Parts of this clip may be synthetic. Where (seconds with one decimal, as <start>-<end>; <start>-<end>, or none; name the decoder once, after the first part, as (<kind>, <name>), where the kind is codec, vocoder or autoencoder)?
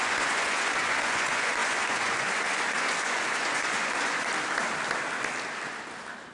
0.0-4.3 (vocoder, Vocos)